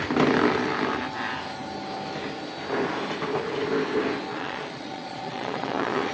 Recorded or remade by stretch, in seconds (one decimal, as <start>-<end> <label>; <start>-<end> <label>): 0.0-4.3 recorded; 4.3-6.1 remade